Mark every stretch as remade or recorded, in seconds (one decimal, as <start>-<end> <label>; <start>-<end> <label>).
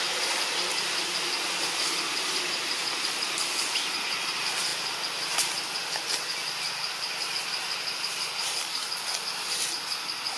0.0-10.4 recorded